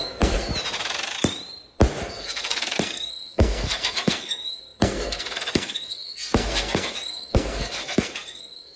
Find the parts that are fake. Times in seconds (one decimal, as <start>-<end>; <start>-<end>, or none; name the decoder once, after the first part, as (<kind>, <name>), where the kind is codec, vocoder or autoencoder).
0.0-0.5 (codec, SNAC); 2.0-8.8